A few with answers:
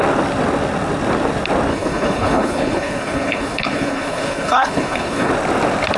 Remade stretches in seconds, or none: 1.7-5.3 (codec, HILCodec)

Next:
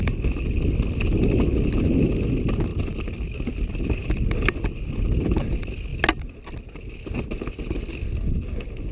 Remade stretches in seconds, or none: none